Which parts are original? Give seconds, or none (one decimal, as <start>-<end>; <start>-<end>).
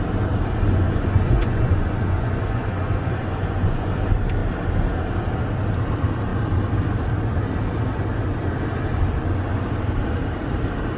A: 0.0-0.7; 3.9-8.9; 9.6-11.0